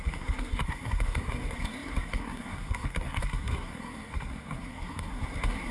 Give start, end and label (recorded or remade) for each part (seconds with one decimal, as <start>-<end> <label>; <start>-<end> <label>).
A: 0.0-5.7 remade